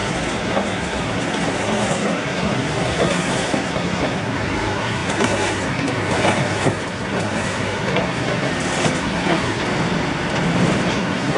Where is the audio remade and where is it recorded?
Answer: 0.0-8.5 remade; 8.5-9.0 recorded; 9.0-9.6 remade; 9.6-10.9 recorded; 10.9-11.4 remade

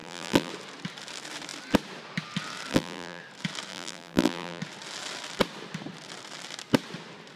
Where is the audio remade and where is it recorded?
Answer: 0.0-0.5 remade; 0.5-2.7 recorded; 2.7-3.2 remade; 3.2-3.7 recorded; 3.7-4.6 remade; 4.6-7.4 recorded

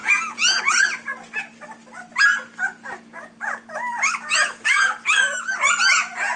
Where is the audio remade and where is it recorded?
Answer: 0.0-0.6 remade; 0.6-6.4 recorded

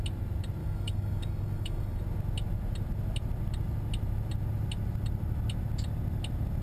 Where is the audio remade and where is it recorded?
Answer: 0.0-0.6 recorded; 0.6-2.0 remade; 2.0-6.6 recorded

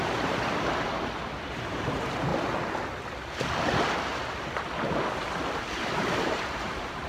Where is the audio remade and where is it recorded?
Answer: 0.0-2.3 remade; 2.3-5.5 recorded; 5.5-7.1 remade

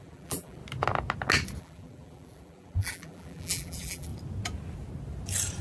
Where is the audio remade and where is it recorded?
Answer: 0.0-0.6 remade; 0.6-1.6 recorded; 1.6-4.1 remade; 4.1-5.6 recorded

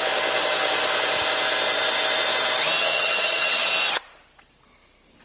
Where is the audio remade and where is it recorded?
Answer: 0.0-2.8 recorded; 2.8-3.7 remade; 3.7-5.2 recorded